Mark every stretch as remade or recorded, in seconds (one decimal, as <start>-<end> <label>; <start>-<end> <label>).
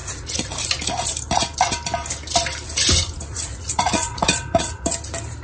0.0-0.6 remade; 0.6-3.3 recorded; 3.3-4.9 remade; 4.9-5.4 recorded